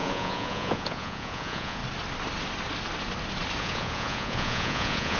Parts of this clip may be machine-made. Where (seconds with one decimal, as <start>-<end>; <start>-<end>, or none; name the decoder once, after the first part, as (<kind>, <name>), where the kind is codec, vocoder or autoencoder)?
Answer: 0.0-1.8 (vocoder, Vocos); 3.6-5.2